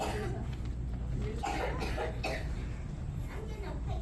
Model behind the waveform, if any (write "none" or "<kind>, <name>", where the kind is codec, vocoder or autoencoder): none